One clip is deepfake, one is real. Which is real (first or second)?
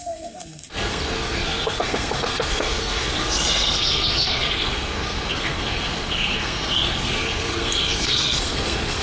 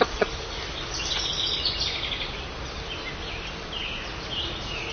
second